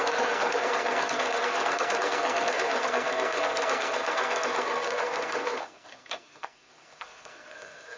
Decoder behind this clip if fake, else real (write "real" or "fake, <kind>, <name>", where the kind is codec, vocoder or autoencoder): fake, codec, SNAC